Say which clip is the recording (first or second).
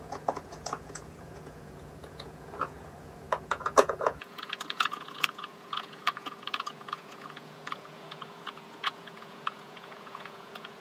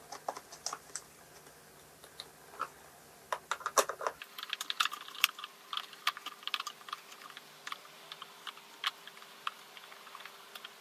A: second